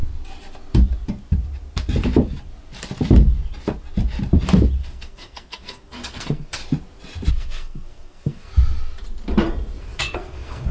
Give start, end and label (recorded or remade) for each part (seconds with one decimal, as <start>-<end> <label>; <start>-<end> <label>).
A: 0.0-4.8 recorded; 4.8-6.6 remade; 6.6-7.3 recorded; 7.3-8.5 remade; 8.5-9.8 recorded; 9.8-10.7 remade